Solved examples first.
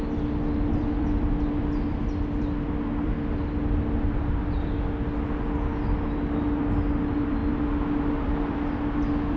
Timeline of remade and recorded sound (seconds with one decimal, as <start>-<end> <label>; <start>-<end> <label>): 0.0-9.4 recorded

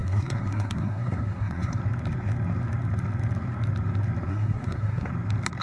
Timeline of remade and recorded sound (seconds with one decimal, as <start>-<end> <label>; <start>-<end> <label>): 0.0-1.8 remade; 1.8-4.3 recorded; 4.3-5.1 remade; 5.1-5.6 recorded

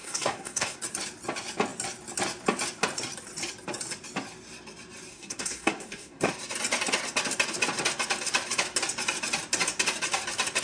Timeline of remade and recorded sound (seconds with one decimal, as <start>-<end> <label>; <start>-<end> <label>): 0.0-0.8 remade; 0.8-5.1 recorded; 5.1-6.3 remade; 6.3-10.6 recorded